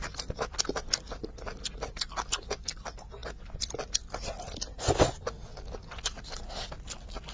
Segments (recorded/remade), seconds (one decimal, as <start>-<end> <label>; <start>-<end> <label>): 0.0-7.3 recorded

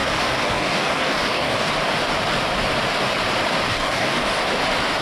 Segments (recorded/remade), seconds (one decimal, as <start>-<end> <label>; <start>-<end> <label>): 0.0-1.7 remade; 1.7-3.7 recorded; 3.7-4.4 remade; 4.4-5.0 recorded

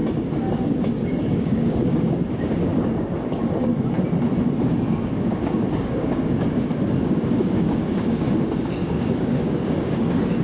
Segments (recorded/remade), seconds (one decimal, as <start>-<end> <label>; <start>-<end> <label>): 0.0-0.5 recorded; 0.5-3.7 remade; 3.7-4.5 recorded; 4.5-10.4 remade

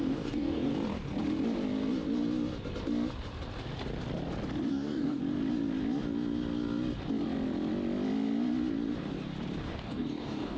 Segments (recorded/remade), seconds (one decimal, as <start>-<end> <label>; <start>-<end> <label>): 0.0-0.7 remade; 0.7-4.7 recorded; 4.7-5.2 remade; 5.2-9.6 recorded; 9.6-10.6 remade